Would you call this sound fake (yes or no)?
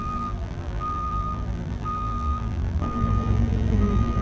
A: yes